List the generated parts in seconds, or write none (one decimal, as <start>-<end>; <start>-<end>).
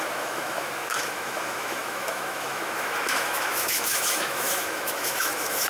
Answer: 0.0-5.7